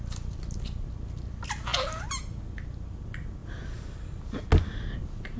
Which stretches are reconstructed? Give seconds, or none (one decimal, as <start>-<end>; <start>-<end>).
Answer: none